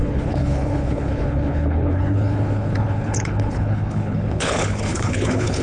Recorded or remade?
remade